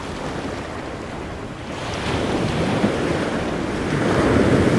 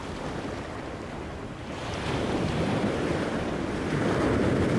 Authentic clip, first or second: first